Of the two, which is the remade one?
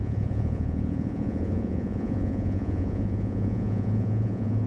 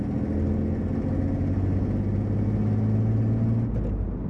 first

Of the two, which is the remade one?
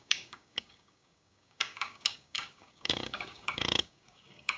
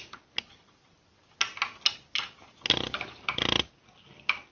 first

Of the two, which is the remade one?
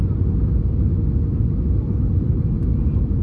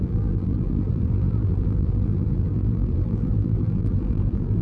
second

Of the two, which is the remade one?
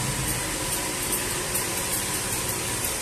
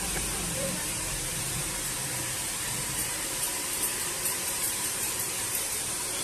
second